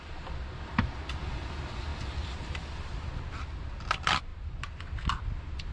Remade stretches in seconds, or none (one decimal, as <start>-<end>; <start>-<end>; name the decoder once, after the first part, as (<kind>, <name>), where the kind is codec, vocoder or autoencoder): 1.9-2.7 (vocoder, BigVGAN v2); 4.3-5.7